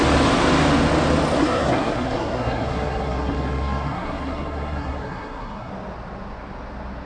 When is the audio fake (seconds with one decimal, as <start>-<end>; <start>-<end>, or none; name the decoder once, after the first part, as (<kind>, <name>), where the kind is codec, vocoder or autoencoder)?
1.4-5.7 (codec, SNAC)